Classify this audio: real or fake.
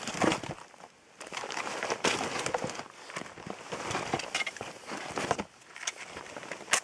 real